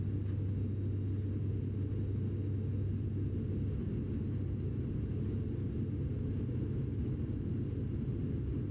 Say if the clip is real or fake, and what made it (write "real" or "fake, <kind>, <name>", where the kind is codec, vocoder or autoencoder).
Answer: real